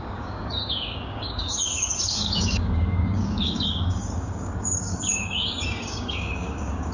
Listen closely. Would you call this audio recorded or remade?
remade